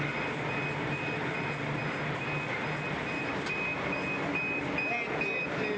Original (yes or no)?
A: yes